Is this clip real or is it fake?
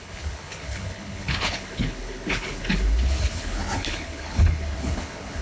fake